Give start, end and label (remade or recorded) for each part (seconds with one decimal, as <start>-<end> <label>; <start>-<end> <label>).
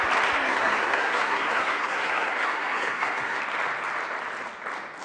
0.0-0.4 recorded; 0.4-3.4 remade; 3.4-5.0 recorded